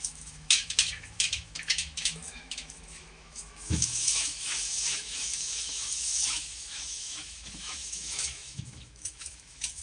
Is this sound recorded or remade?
remade